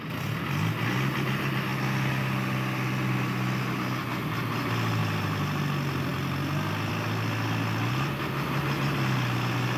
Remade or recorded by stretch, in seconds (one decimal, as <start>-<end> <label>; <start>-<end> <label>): 0.0-5.0 recorded; 5.0-5.6 remade; 5.6-9.8 recorded